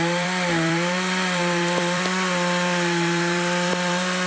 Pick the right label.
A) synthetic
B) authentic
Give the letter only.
A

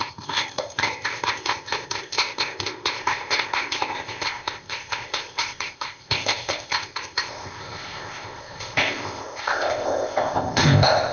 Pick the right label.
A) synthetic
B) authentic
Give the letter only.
A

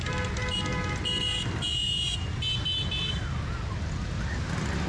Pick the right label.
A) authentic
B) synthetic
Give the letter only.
A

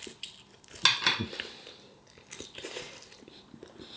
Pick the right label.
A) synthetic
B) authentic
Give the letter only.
B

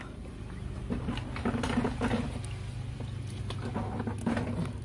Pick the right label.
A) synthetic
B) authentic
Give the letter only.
B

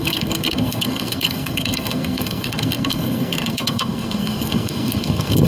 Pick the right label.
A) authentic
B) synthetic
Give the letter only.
B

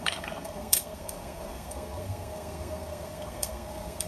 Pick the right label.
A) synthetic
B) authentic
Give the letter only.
A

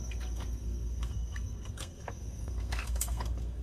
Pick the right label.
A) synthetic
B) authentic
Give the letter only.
A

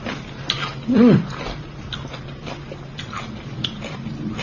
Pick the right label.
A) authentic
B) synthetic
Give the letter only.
A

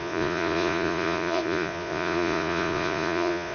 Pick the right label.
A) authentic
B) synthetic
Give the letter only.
B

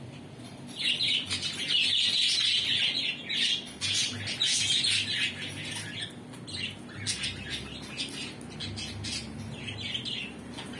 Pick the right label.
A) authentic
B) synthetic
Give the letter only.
A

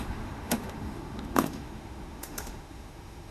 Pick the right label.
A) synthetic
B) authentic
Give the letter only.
A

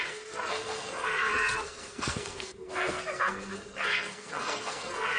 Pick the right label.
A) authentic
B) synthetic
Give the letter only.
B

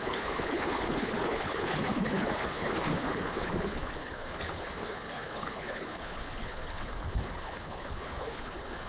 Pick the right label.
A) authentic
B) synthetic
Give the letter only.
B